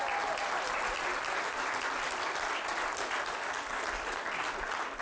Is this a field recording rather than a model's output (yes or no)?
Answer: yes